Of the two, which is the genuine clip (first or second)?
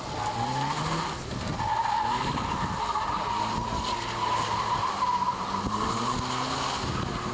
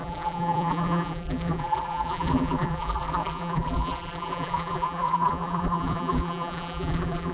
first